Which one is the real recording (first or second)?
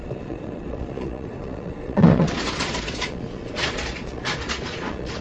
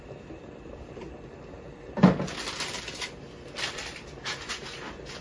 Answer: second